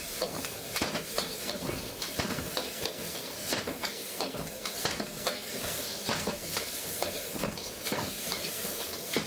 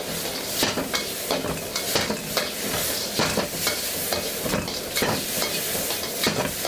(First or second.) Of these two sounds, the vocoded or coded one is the first